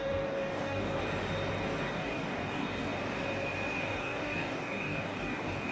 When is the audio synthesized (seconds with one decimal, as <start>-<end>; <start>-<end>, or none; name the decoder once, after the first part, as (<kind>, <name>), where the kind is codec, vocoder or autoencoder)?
0.0-1.0 (codec, DAC); 1.9-2.9; 3.8-5.7